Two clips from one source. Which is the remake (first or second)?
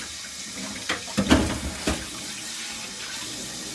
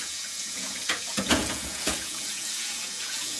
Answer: second